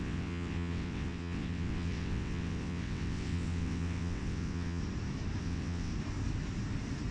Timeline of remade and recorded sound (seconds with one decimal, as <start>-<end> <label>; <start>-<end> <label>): 0.0-4.8 remade; 4.8-5.4 recorded; 5.4-5.9 remade; 5.9-7.1 recorded